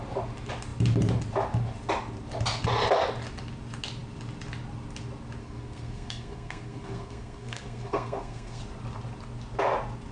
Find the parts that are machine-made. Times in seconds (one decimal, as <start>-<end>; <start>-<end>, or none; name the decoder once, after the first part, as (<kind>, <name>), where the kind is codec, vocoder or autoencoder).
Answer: 5.4-8.6 (codec, SNAC)